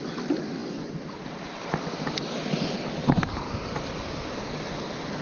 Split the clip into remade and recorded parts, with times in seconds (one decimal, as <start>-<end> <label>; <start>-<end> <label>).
0.0-5.2 recorded